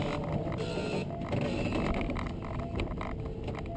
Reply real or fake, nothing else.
real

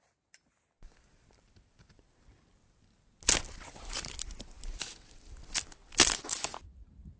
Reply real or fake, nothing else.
real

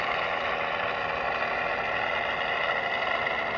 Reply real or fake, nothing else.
real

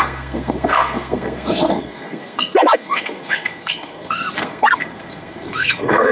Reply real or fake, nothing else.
fake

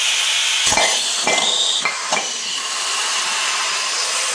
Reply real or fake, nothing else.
real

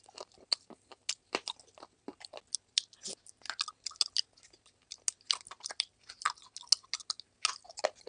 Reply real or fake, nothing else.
real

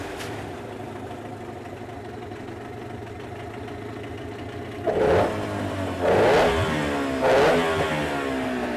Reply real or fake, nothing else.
real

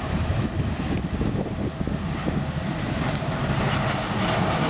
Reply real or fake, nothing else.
real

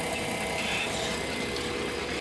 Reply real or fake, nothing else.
real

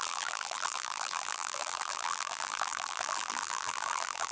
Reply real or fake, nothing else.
fake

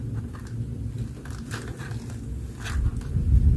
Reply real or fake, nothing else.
real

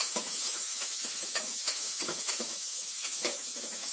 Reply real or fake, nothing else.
fake